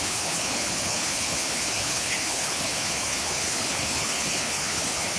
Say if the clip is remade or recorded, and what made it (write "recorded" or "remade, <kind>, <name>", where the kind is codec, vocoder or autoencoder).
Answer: remade, codec, HILCodec